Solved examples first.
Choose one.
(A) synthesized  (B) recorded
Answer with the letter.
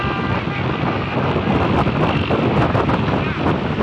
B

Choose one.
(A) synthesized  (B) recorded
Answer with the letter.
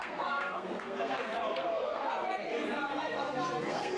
A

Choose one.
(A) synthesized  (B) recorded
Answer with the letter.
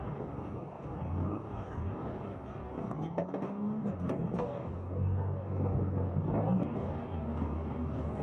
A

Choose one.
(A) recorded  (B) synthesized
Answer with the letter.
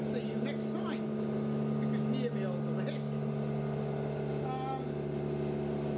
A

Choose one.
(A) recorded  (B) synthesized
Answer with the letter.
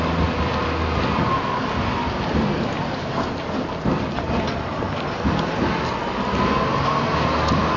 A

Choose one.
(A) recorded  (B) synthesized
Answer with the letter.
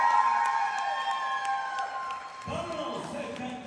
A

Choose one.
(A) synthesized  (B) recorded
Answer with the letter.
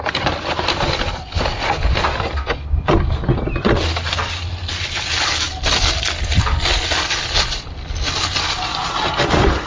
B